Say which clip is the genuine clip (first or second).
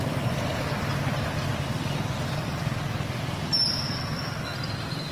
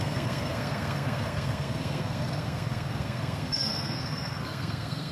first